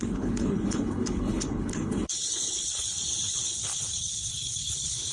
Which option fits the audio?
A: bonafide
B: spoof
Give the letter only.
B